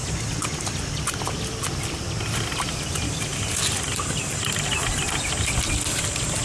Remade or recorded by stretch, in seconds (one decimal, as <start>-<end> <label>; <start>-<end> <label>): 0.0-6.4 recorded